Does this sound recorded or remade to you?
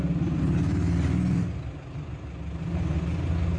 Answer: recorded